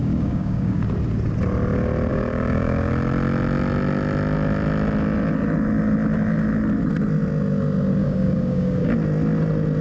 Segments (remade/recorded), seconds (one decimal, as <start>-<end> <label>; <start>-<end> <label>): 0.0-0.8 remade; 0.8-2.1 recorded; 2.1-2.9 remade; 2.9-8.0 recorded; 8.0-8.9 remade; 8.9-9.8 recorded